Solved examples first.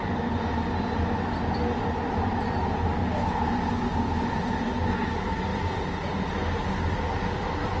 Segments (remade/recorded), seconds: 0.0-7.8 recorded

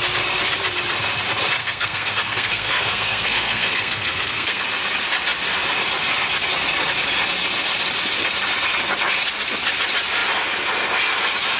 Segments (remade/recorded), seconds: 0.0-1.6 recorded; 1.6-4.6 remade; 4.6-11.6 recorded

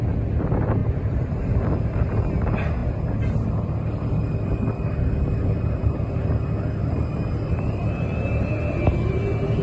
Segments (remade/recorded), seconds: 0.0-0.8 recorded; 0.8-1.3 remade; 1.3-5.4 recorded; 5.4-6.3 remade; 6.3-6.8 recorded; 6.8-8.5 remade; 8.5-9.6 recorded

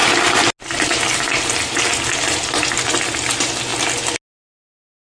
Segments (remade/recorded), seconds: 0.0-5.0 recorded

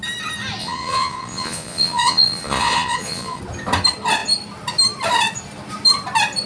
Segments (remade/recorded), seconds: 0.0-0.6 recorded; 0.6-3.4 remade; 3.4-6.5 recorded

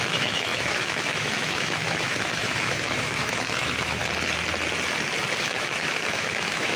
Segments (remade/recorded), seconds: 0.0-4.0 remade; 4.0-5.4 recorded; 5.4-6.8 remade

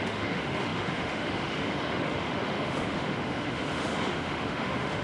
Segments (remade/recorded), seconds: 0.0-5.0 remade